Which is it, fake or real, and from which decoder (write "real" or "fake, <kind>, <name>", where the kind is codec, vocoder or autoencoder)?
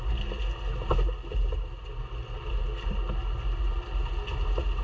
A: real